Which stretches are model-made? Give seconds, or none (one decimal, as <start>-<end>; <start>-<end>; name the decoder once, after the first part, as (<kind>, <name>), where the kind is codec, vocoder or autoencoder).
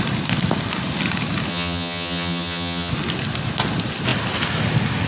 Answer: 1.5-2.9 (vocoder, HiFi-GAN)